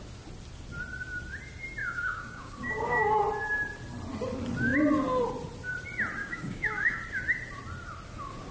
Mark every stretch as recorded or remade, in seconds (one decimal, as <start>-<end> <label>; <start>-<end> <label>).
0.0-1.8 recorded; 1.8-3.2 remade; 3.2-6.2 recorded; 6.2-7.0 remade; 7.0-8.5 recorded